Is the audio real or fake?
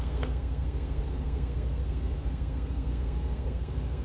fake